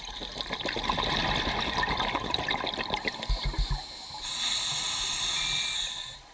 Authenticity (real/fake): real